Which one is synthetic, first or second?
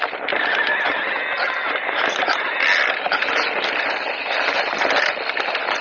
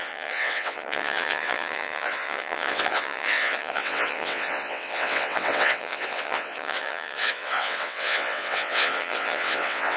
second